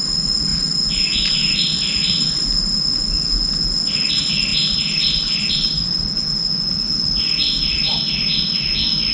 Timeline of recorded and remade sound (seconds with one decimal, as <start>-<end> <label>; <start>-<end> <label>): 0.0-9.1 recorded